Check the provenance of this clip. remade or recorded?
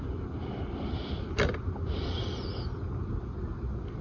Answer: recorded